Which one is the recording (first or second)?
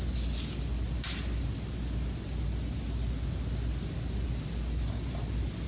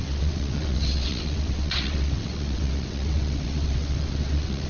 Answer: first